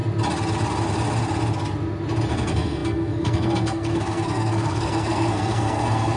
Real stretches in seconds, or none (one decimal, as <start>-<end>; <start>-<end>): 0.0-2.3